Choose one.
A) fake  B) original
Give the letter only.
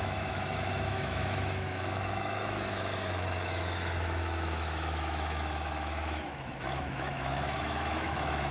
A